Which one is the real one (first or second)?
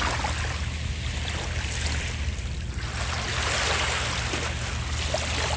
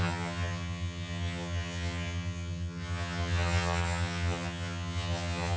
first